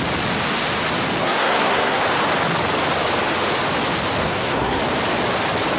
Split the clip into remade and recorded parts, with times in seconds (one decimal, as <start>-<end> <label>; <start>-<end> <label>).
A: 0.0-1.2 recorded; 1.2-2.0 remade; 2.0-4.2 recorded; 4.2-4.8 remade; 4.8-5.8 recorded